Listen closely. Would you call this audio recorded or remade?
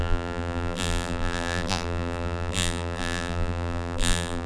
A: remade